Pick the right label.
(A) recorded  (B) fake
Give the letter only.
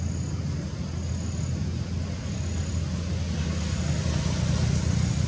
A